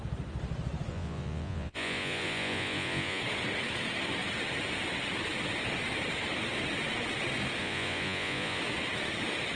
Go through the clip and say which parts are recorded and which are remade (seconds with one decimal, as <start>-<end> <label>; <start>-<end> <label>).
0.0-0.9 recorded; 0.9-3.2 remade; 3.2-7.6 recorded; 7.6-8.6 remade; 8.6-9.6 recorded